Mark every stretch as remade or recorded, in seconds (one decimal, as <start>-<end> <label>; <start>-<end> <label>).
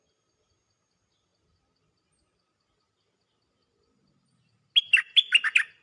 0.0-5.8 recorded